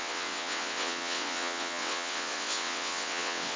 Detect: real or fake fake